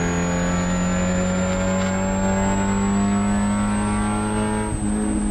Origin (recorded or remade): recorded